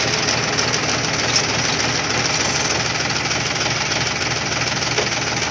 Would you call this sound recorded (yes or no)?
yes